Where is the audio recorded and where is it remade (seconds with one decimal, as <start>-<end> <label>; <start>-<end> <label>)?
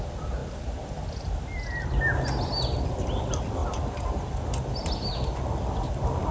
0.0-6.3 recorded